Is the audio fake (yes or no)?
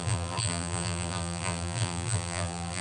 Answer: yes